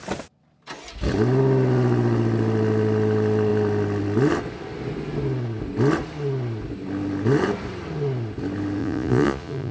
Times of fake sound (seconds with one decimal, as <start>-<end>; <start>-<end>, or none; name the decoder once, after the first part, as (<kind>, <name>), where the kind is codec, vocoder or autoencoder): 8.8-9.7 (vocoder, Vocos)

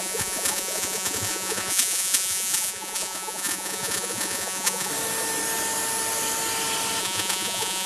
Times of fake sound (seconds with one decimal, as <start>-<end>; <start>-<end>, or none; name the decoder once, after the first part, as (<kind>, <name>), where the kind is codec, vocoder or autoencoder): 0.0-4.9 (vocoder, Vocos); 7.0-7.9

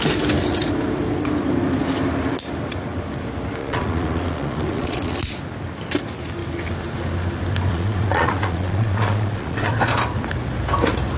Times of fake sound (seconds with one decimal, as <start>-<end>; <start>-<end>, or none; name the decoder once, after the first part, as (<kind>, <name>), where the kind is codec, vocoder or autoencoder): 3.6-5.2 (vocoder, Vocos); 7.7-9.7

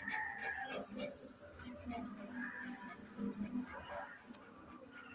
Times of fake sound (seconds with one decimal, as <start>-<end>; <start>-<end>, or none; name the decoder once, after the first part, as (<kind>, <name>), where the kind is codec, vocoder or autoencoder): none